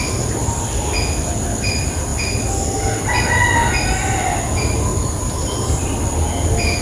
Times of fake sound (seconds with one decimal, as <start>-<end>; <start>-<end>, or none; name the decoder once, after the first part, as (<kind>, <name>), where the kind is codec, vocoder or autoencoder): 4.9-6.0 (vocoder, BigVGAN v2)